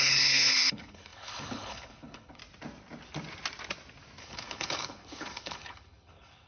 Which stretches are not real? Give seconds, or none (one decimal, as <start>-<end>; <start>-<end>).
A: 0.0-2.4; 4.2-6.5